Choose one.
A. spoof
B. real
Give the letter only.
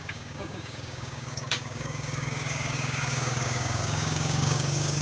A